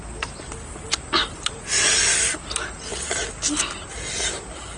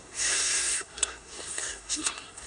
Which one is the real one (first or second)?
first